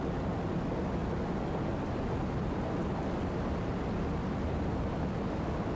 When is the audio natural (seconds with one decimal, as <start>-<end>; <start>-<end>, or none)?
0.0-5.8